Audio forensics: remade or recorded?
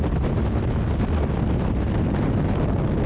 recorded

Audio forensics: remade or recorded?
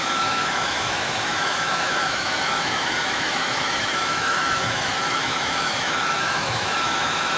remade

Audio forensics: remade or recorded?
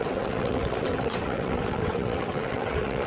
remade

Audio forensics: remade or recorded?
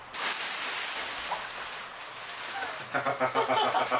recorded